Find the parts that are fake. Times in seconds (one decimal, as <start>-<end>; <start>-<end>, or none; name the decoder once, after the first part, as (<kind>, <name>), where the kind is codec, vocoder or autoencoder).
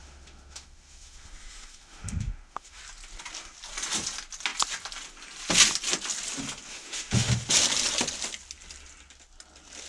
0.0-2.8 (autoencoder, DAC-VAE); 6.7-7.3